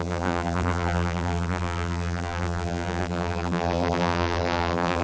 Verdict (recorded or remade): remade